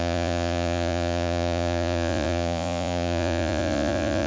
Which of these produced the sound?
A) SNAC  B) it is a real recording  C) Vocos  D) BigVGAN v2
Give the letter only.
C